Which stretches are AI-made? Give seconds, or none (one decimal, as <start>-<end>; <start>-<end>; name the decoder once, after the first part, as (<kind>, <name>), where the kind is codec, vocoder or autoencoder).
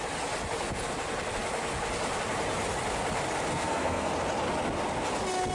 3.5-4.1 (codec, SNAC)